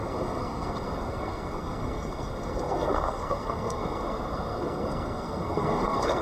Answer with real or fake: fake